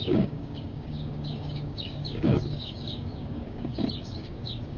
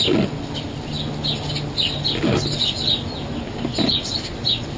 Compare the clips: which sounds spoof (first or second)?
first